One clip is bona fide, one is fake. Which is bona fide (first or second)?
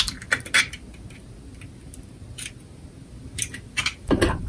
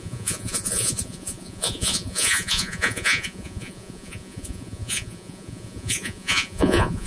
first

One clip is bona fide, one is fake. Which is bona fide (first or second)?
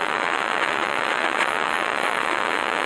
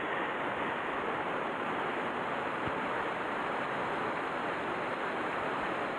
second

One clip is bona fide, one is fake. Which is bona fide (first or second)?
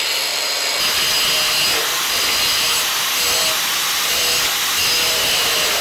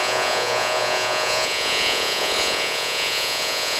first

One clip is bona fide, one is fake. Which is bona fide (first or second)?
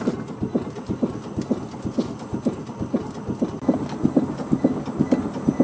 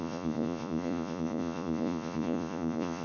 first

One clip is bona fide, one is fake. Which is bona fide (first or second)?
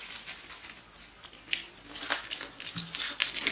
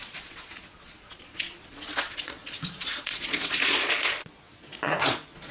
first